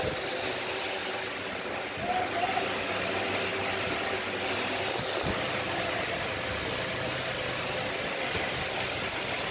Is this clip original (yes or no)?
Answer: yes